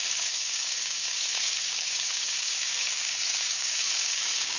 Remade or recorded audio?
remade